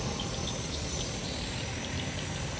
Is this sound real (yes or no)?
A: yes